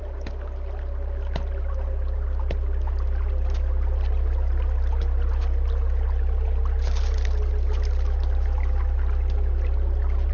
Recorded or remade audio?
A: recorded